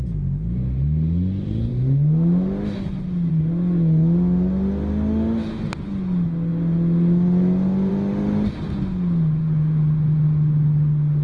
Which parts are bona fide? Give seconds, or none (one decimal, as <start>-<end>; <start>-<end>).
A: 0.0-11.2